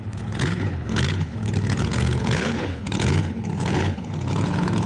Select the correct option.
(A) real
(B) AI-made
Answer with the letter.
B